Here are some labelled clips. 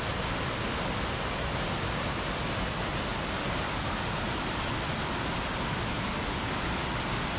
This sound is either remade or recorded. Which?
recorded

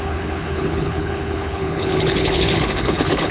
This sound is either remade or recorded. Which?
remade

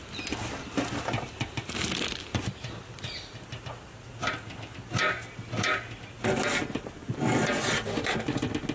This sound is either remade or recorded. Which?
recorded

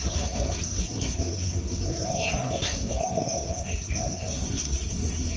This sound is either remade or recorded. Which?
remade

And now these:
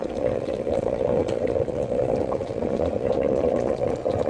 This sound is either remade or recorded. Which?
remade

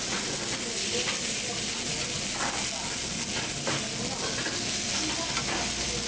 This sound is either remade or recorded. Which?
recorded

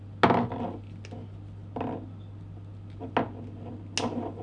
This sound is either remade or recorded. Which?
recorded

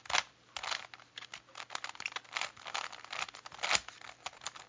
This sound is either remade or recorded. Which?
recorded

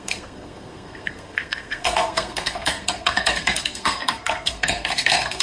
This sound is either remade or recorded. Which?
remade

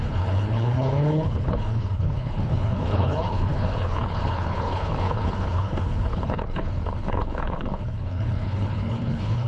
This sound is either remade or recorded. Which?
remade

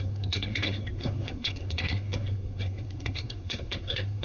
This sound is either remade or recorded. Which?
remade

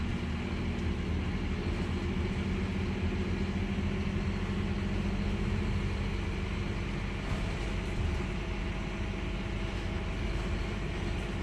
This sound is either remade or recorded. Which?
recorded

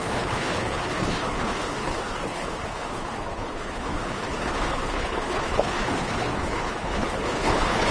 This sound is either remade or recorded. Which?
remade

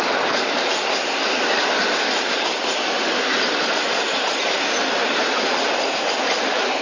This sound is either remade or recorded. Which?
recorded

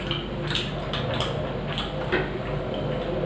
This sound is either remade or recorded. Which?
recorded